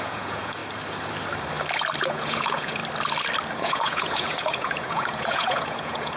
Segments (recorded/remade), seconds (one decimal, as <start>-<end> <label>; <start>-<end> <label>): 0.0-0.6 remade; 0.6-2.0 recorded; 2.0-2.8 remade; 2.8-3.6 recorded; 3.6-6.2 remade

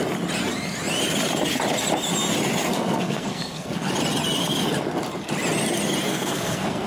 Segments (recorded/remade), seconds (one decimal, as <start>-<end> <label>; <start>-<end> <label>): 0.0-2.6 recorded; 2.6-3.9 remade; 3.9-6.1 recorded; 6.1-6.9 remade